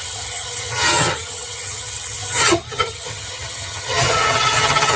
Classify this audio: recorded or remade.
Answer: remade